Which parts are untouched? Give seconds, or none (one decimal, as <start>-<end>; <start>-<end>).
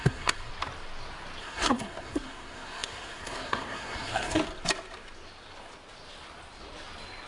0.5-1.4; 4.4-7.3